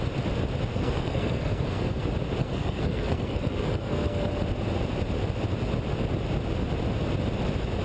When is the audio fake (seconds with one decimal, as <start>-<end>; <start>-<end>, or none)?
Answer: 0.7-2.0; 2.4-4.3